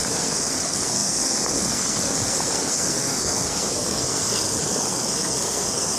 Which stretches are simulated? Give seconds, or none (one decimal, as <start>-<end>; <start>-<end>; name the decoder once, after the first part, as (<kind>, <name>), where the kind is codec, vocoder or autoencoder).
0.0-6.0 (codec, SNAC)